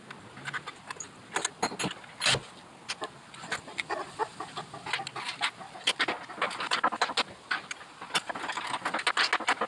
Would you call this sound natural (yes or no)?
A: yes